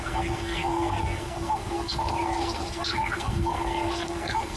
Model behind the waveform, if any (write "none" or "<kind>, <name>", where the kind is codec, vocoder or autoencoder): codec, SNAC